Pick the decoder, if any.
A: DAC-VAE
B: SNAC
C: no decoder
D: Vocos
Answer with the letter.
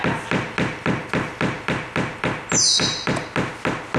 C